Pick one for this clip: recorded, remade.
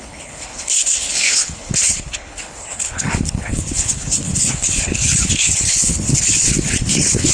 remade